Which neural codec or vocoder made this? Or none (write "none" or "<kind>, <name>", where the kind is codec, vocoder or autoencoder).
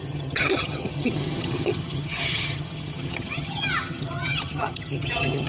vocoder, HiFi-GAN